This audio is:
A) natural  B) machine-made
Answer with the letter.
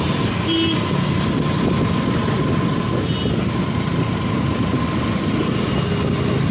A